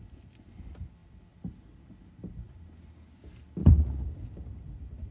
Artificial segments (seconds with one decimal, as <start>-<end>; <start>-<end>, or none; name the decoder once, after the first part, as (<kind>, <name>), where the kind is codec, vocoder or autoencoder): 3.6-4.1 (vocoder, Vocos)